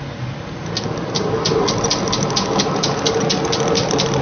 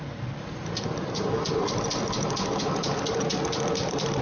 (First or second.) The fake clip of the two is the second